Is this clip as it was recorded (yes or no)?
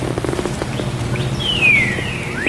no